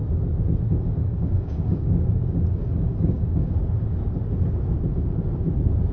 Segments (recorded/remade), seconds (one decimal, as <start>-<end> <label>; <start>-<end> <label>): 0.0-1.0 recorded; 1.0-3.5 remade; 3.5-5.9 recorded